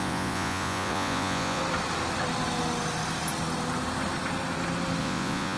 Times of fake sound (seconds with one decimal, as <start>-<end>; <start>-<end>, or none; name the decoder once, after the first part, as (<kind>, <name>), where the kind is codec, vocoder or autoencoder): 0.0-1.6 (vocoder, Vocos); 5.0-5.6